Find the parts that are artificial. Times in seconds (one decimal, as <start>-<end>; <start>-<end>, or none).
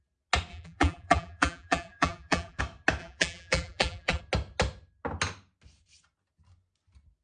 0.5-2.6; 3.0-4.2